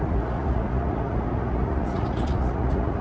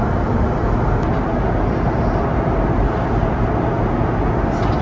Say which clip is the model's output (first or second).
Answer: first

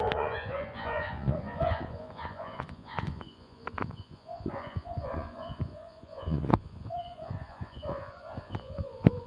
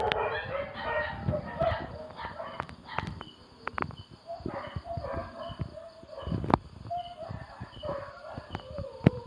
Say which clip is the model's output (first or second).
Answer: first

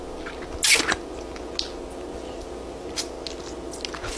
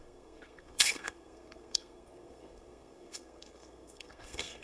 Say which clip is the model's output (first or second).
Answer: second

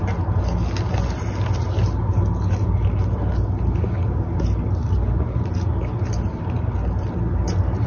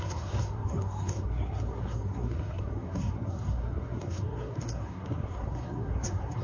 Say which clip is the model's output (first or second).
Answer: second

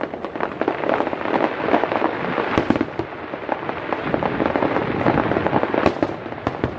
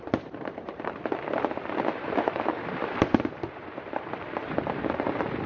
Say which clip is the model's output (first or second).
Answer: second